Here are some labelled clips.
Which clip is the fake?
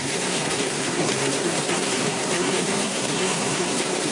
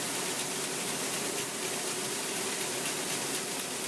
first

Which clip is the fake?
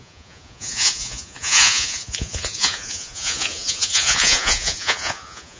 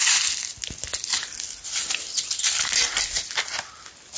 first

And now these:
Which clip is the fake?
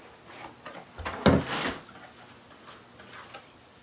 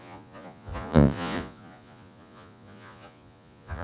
second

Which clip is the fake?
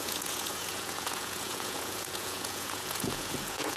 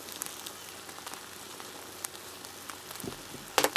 first